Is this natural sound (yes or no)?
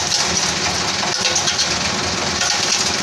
yes